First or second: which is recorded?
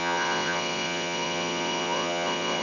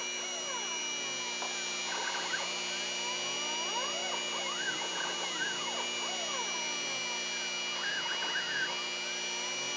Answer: second